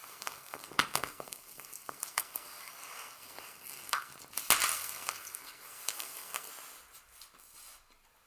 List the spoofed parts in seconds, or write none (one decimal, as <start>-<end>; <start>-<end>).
0.0-4.1; 4.7-6.5